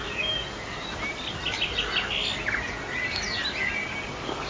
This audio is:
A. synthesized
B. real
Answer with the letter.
B